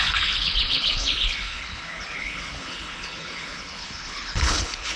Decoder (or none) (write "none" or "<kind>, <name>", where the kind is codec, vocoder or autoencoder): codec, HILCodec